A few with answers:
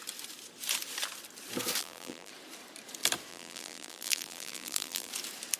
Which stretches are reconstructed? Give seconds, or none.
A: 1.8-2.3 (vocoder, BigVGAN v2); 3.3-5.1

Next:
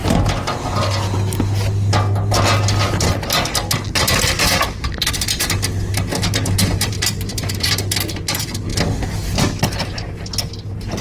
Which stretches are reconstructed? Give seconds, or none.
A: 6.1-7.5 (vocoder, BigVGAN v2)

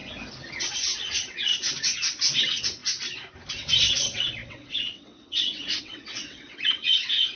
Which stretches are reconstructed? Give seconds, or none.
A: 0.6-1.5 (vocoder, WaveNeXt); 2.4-2.8; 3.5-7.3

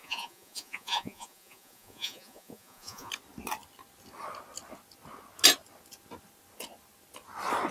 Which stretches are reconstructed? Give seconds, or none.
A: 0.0-3.1 (vocoder, Vocos)

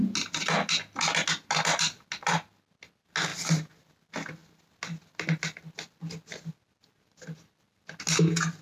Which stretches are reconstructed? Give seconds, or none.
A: none

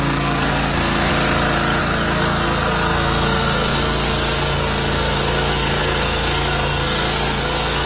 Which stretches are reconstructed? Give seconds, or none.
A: 0.0-1.1 (codec, SNAC); 1.8-7.9

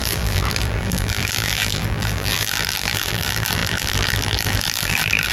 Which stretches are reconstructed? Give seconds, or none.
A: 0.0-5.3 (vocoder, BigVGAN v2)

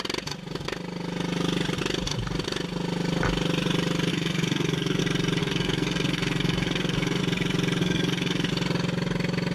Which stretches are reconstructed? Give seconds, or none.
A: 4.1-5.0 (codec, SNAC); 5.4-7.2; 7.8-8.5